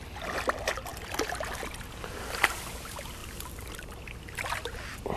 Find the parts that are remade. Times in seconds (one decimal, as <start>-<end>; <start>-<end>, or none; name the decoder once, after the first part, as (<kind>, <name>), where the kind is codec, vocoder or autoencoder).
0.9-2.7 (vocoder, BigVGAN v2); 3.2-3.9